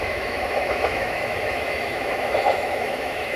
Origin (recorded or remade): remade